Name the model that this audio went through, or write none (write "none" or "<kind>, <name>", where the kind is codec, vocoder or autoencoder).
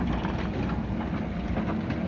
none